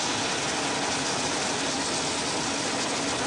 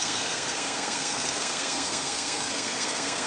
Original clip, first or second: first